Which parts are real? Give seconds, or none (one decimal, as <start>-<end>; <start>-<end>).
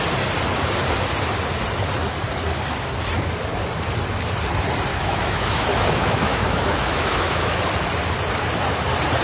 0.0-4.9; 7.6-9.2